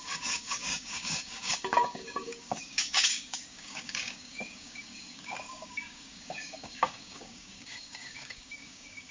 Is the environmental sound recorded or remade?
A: remade